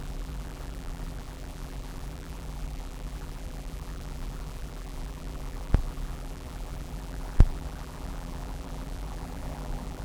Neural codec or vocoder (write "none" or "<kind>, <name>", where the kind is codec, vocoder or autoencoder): vocoder, BigVGAN v2